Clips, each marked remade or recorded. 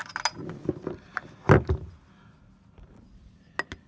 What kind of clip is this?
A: recorded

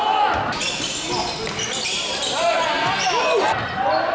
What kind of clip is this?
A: recorded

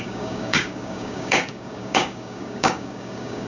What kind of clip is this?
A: remade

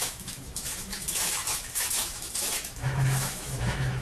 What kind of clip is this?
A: remade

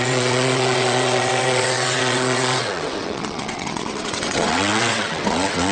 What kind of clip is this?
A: remade